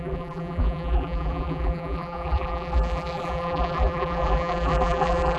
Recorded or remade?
remade